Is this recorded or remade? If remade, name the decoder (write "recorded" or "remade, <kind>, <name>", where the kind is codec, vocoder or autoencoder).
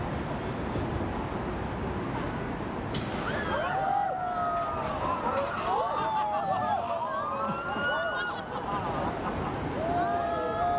recorded